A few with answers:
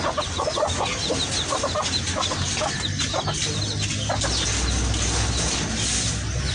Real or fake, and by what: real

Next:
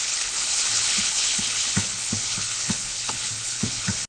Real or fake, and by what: fake, codec, HILCodec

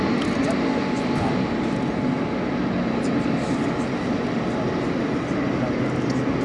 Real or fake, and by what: real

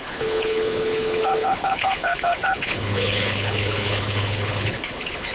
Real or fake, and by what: fake, codec, HILCodec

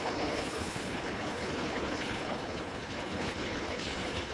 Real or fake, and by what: fake, codec, HILCodec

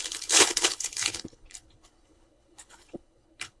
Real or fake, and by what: fake, codec, HILCodec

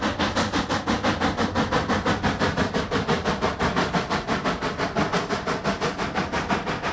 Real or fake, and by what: real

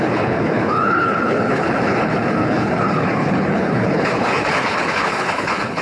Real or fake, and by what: fake, codec, HILCodec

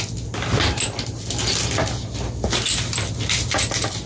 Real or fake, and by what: real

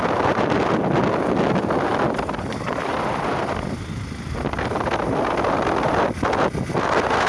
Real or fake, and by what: real